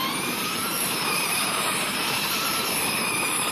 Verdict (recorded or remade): remade